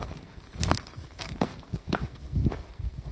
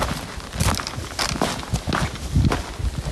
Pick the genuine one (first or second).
second